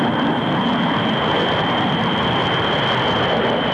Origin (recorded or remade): recorded